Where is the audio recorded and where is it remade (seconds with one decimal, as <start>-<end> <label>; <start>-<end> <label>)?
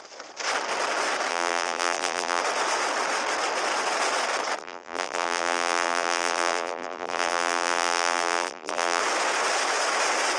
0.0-1.3 recorded; 1.3-2.4 remade; 2.4-4.6 recorded; 4.6-9.0 remade; 9.0-10.4 recorded